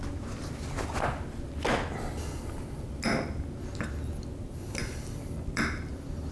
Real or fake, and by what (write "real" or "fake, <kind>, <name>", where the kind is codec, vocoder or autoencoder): real